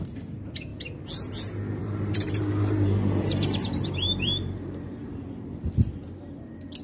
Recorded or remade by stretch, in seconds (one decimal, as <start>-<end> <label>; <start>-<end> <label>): 0.0-1.8 recorded; 1.8-5.9 remade; 5.9-6.8 recorded